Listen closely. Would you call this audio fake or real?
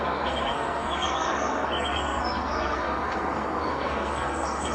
fake